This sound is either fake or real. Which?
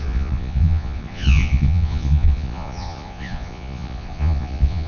fake